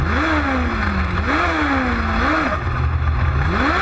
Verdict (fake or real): real